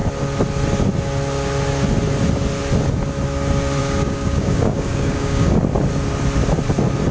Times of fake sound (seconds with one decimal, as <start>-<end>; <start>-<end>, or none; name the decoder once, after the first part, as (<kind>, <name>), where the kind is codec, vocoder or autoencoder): 3.8-5.6 (codec, DAC)